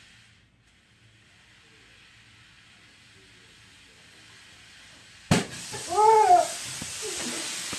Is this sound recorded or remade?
recorded